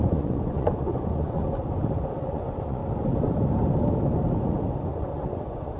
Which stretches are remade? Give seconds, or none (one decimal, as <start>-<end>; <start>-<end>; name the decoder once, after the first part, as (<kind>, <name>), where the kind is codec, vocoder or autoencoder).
0.0-1.4 (vocoder, Vocos); 2.2-2.8; 4.9-5.8